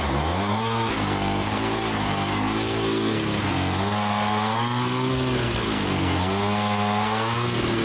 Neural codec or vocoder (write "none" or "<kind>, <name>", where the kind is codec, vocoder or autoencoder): codec, SNAC